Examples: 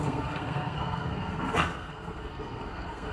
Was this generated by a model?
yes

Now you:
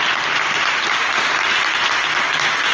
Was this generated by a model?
no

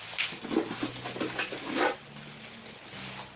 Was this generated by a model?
no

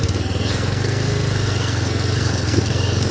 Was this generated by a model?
yes